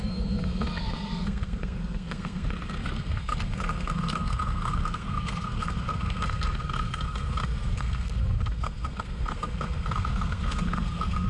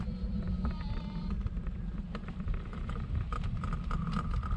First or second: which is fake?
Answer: first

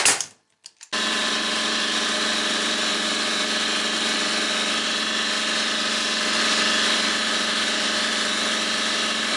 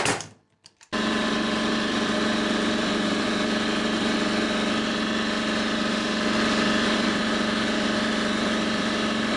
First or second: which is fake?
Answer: second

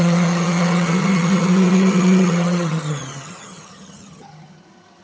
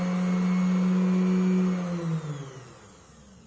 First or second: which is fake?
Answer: first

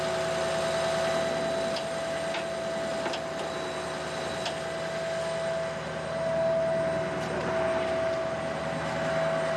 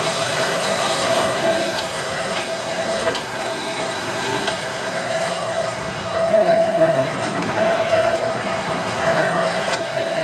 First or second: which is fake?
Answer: second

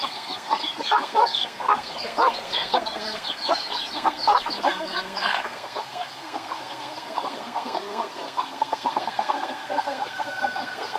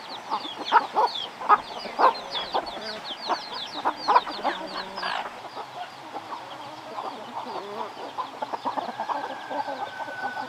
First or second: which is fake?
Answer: first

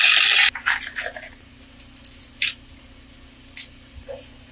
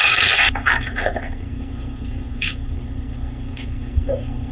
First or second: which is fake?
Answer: second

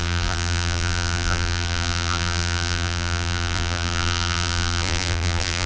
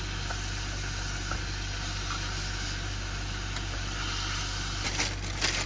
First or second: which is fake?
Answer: first